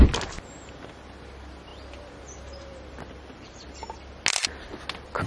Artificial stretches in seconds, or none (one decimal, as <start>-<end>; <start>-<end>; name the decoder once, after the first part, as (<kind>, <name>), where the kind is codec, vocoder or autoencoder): none